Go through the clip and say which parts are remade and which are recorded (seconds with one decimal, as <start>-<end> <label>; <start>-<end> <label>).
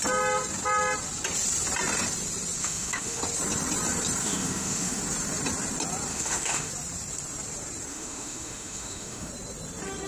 0.0-2.6 recorded; 2.6-3.2 remade; 3.2-4.2 recorded; 4.2-5.0 remade; 5.0-6.1 recorded; 6.1-6.7 remade; 6.7-7.9 recorded; 7.9-9.3 remade; 9.3-10.1 recorded